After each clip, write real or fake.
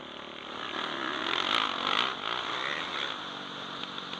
real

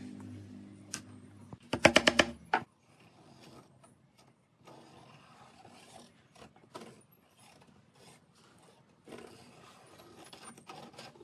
real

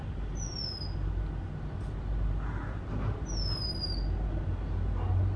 real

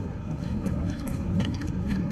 fake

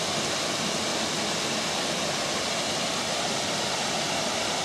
real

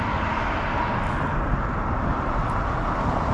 real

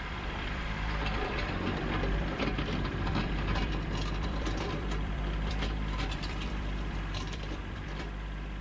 fake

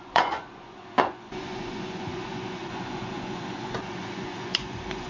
fake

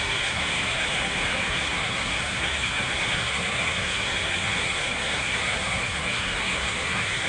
fake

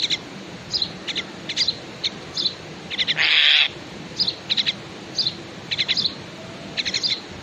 real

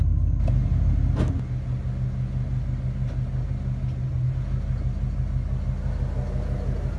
real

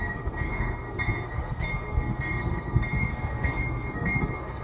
fake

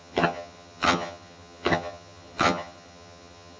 fake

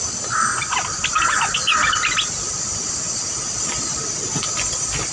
real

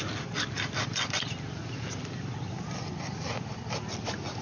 real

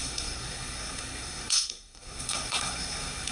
fake